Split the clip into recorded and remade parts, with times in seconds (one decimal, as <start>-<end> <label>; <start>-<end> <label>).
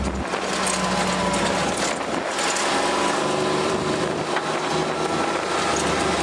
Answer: 0.0-2.3 recorded; 2.3-4.7 remade; 4.7-6.2 recorded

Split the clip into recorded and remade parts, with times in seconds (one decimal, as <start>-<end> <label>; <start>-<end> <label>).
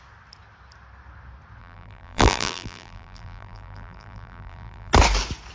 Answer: 0.0-1.6 recorded; 1.6-4.9 remade; 4.9-5.5 recorded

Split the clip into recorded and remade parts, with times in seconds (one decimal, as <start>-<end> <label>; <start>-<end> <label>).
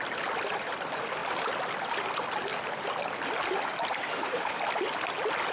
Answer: 0.0-4.0 recorded; 4.0-4.6 remade; 4.6-5.5 recorded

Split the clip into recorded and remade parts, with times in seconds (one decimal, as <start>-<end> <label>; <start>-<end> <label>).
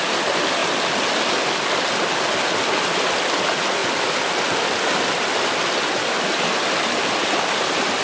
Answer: 0.0-3.8 recorded; 3.8-4.7 remade; 4.7-8.0 recorded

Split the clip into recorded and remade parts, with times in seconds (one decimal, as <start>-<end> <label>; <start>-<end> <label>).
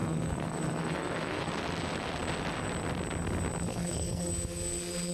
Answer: 0.0-1.5 remade; 1.5-3.7 recorded; 3.7-4.3 remade; 4.3-5.1 recorded